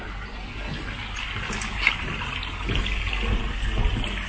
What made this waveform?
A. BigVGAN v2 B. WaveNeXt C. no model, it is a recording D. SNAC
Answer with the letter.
C